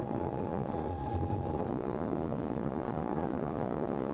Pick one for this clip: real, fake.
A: fake